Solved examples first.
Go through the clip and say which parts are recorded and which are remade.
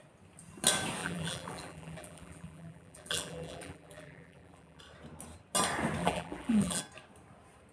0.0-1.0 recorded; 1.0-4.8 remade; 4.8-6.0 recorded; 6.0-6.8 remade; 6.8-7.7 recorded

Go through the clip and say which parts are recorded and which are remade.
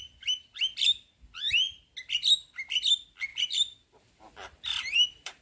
0.0-3.3 recorded; 3.3-5.4 remade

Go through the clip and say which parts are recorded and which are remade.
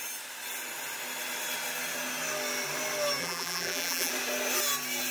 0.0-3.2 recorded; 3.2-4.1 remade; 4.1-5.1 recorded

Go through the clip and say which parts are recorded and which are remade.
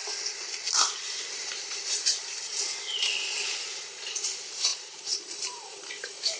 0.0-1.3 recorded; 1.3-2.5 remade; 2.5-3.8 recorded; 3.8-6.4 remade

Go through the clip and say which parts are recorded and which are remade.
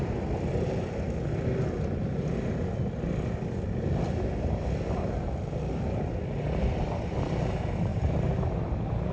0.0-7.9 recorded; 7.9-8.6 remade; 8.6-9.1 recorded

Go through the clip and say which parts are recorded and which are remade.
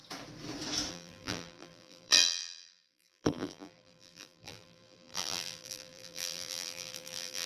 0.0-0.9 recorded; 0.9-7.5 remade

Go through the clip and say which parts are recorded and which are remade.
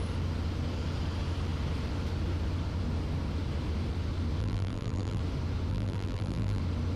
0.0-4.4 recorded; 4.4-5.2 remade; 5.2-5.7 recorded; 5.7-6.6 remade; 6.6-7.0 recorded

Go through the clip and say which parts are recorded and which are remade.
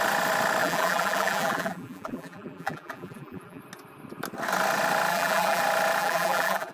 0.0-0.6 recorded; 0.6-3.6 remade; 3.6-5.1 recorded; 5.1-5.6 remade; 5.6-6.0 recorded; 6.0-6.7 remade